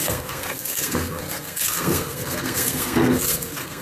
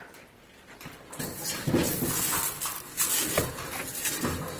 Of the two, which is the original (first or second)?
second